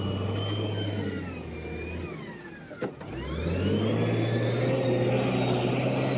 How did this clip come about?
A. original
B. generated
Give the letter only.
A